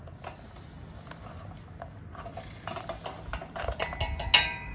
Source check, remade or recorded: recorded